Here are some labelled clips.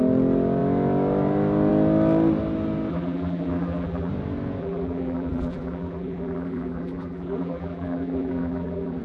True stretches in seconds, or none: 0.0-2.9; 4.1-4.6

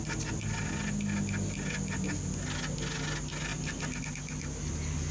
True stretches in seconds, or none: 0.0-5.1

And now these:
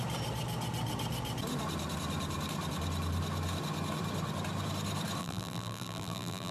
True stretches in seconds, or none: 0.0-5.2

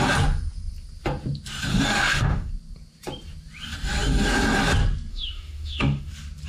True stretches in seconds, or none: 0.0-1.7; 2.5-5.1; 6.1-6.5

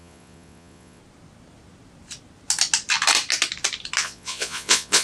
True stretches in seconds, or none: 1.0-4.0